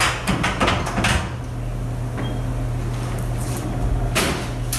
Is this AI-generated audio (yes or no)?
no